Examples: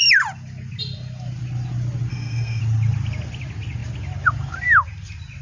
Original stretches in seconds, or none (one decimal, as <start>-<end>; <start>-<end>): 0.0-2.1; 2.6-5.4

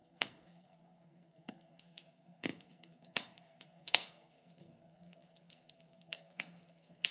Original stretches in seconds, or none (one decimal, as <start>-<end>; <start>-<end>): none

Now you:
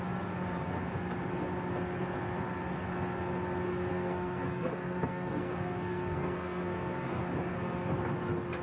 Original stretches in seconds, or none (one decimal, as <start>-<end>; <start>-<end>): 0.0-3.9; 7.2-8.6

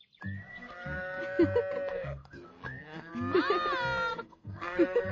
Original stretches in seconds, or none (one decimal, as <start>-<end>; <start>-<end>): 0.0-0.5; 1.2-1.9; 3.1-4.1

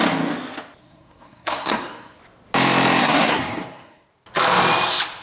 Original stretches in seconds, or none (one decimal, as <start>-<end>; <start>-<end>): 0.0-0.8; 2.2-3.0; 4.1-5.2

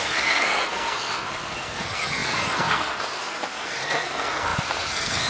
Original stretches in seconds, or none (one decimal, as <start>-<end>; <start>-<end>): none

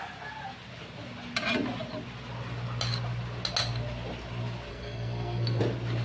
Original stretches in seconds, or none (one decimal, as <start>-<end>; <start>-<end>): 0.0-4.7; 5.6-6.0

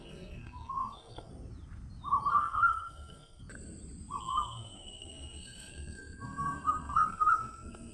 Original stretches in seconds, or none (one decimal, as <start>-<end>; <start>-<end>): 1.3-2.3; 3.4-4.2